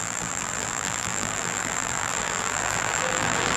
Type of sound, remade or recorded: remade